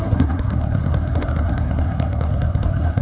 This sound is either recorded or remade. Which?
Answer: remade